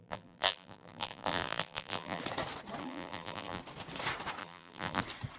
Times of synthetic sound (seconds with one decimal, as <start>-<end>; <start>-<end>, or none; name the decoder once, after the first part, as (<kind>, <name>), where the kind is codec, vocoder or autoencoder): 0.0-2.2 (vocoder, BigVGAN v2); 2.8-3.6; 4.4-5.0

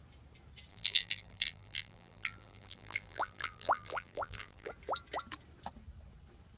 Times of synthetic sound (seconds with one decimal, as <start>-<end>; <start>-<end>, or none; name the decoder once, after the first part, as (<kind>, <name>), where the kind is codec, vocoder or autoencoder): 0.7-4.7 (vocoder, BigVGAN v2)

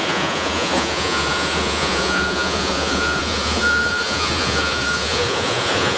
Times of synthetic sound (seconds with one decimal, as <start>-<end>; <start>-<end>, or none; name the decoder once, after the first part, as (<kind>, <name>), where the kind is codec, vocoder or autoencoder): 0.0-6.0 (vocoder, Vocos)

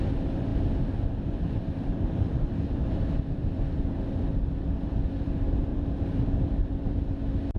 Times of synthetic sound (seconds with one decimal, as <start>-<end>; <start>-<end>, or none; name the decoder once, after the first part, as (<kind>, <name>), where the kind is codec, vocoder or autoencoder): 0.5-4.1 (vocoder, BigVGAN v2); 5.7-7.0

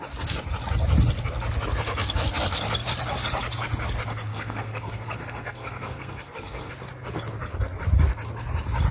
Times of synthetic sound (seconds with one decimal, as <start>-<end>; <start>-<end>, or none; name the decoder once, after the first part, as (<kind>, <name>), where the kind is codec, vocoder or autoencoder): 4.3-6.7 (codec, SNAC)